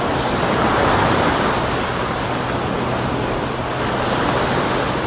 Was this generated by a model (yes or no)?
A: no